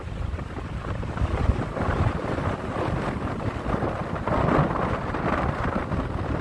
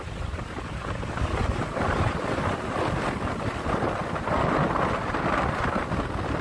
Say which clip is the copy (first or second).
first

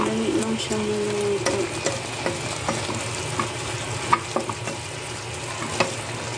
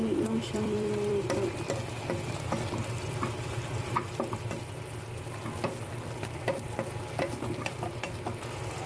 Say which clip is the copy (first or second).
second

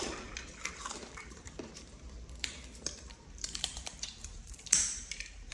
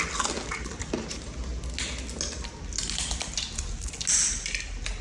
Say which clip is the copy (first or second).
first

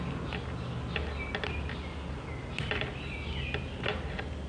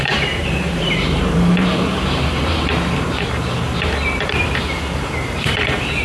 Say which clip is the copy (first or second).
second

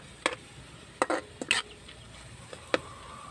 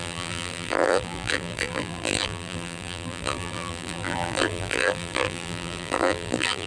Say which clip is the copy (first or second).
second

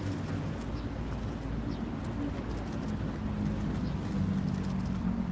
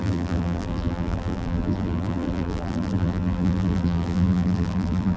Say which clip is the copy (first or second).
second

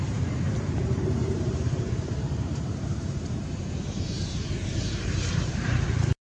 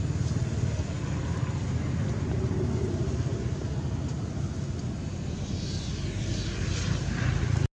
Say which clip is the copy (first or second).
first